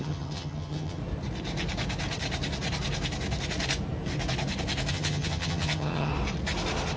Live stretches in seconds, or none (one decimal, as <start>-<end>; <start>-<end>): 1.0-4.9; 6.1-7.0